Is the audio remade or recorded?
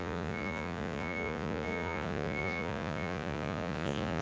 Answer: remade